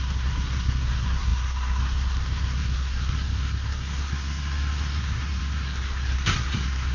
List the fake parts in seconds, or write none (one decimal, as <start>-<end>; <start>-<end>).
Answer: 0.0-6.9